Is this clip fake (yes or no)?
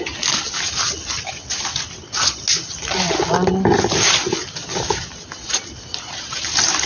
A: no